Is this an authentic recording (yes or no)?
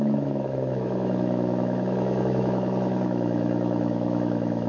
no